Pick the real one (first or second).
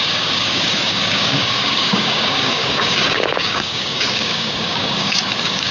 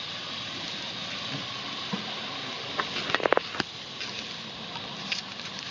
second